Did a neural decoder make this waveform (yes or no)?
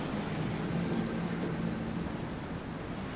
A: no